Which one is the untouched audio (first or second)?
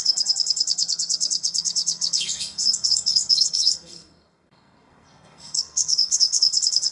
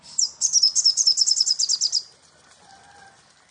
second